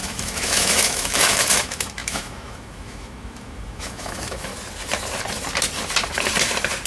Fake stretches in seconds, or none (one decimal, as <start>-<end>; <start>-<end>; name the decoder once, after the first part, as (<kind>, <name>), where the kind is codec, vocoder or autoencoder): 0.0-4.5 (autoencoder, DAC-VAE)